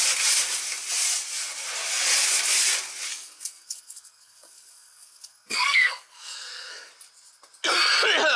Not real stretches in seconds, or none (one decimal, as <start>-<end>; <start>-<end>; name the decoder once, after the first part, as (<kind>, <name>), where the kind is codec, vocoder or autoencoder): 3.1-6.9 (codec, SNAC)